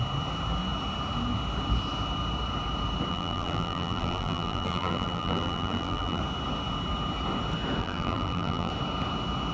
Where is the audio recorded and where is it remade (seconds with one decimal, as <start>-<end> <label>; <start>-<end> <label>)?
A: 0.0-3.1 recorded; 3.1-6.2 remade; 6.2-7.8 recorded; 7.8-8.7 remade; 8.7-9.5 recorded